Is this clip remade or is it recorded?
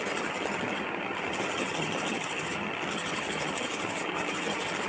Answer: remade